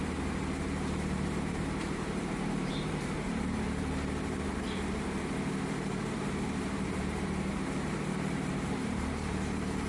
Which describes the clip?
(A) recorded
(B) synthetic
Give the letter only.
B